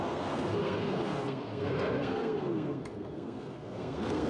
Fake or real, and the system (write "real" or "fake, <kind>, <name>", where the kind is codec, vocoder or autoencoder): fake, codec, SNAC